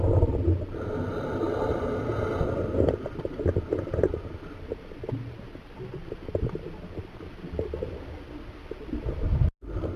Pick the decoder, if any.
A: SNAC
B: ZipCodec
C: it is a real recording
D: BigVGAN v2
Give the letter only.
C